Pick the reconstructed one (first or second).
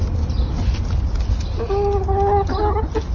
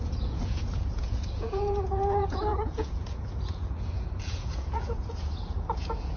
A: second